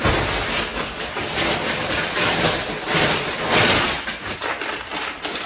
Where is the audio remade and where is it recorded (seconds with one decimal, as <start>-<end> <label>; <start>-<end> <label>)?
0.0-5.5 recorded